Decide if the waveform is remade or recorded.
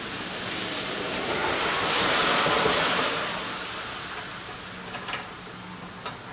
recorded